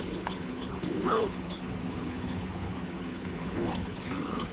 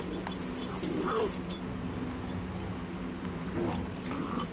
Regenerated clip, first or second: first